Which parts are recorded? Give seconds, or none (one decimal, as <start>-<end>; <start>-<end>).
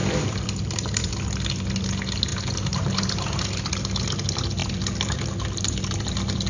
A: 1.1-4.6